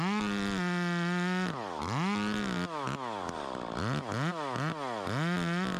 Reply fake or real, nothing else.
real